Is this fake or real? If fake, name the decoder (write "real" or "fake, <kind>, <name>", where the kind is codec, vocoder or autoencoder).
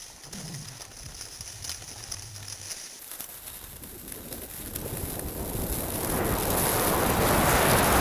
real